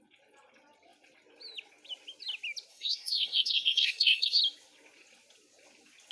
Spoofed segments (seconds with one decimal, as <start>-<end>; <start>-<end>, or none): 2.7-4.4